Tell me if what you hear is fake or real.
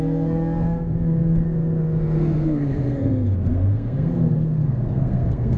fake